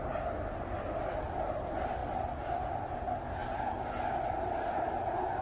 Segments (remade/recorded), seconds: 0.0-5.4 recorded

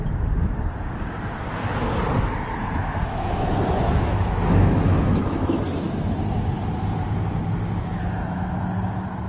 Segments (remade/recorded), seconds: 0.0-2.8 recorded; 2.8-6.2 remade; 6.2-9.3 recorded

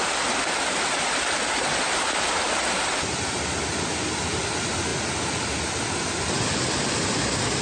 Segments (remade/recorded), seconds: 0.0-7.6 recorded

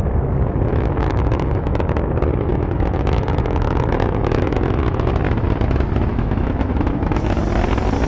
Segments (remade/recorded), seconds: 0.0-0.7 recorded; 0.7-2.0 remade; 2.0-2.5 recorded; 2.5-5.1 remade; 5.1-6.1 recorded; 6.1-7.4 remade; 7.4-8.1 recorded